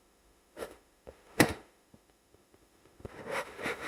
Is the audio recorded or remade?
remade